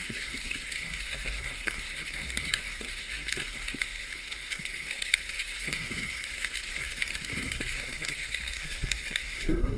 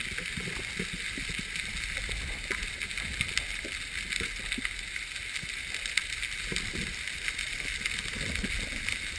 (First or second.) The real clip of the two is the second